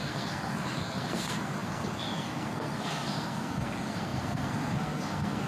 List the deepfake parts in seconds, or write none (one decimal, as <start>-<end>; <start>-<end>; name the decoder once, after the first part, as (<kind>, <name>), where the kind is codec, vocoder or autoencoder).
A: 0.0-5.5 (codec, SNAC)